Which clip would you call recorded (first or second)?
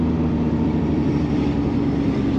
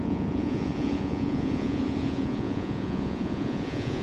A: first